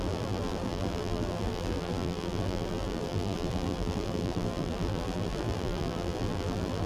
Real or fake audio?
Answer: fake